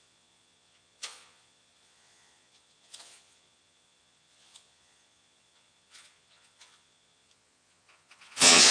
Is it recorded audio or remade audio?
remade